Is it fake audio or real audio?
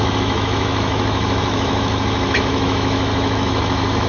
fake